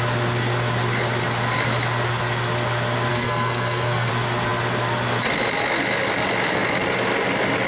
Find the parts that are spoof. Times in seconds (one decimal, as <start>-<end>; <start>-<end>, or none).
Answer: 3.1-4.1